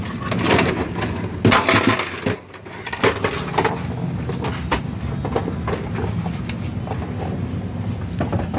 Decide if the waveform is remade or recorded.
recorded